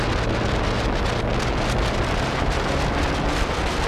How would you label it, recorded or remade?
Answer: recorded